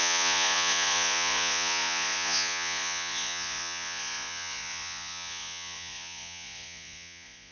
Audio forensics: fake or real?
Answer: fake